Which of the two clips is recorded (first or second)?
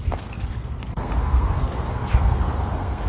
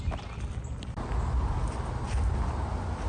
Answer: second